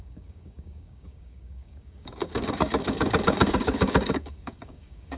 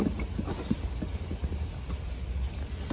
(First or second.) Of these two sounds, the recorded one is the second